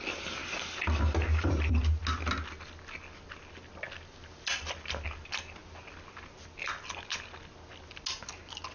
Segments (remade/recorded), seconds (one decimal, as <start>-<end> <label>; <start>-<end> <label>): 0.0-8.7 recorded